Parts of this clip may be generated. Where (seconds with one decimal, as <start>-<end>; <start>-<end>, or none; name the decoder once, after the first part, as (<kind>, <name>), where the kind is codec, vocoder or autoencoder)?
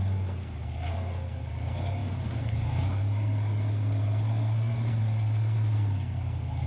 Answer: 0.0-6.7 (codec, SNAC)